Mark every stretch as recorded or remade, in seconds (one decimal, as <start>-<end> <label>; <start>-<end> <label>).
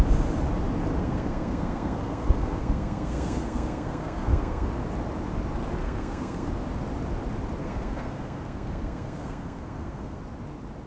0.0-1.0 recorded; 1.0-4.7 remade; 4.7-5.8 recorded; 5.8-6.5 remade; 6.5-7.6 recorded; 7.6-10.2 remade; 10.2-10.9 recorded